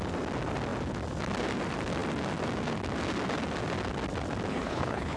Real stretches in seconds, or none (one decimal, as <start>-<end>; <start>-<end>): 0.0-4.5